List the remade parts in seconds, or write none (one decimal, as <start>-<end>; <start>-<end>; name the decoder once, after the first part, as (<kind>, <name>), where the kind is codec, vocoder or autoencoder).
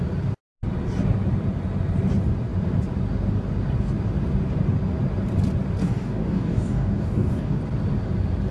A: 5.8-7.6 (codec, DAC)